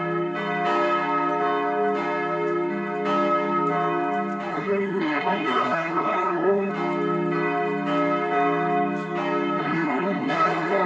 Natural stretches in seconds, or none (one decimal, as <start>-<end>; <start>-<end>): 0.0-4.5; 6.7-9.6